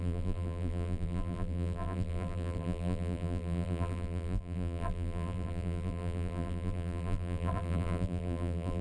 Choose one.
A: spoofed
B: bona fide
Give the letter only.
A